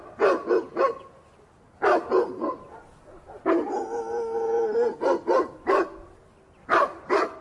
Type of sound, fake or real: real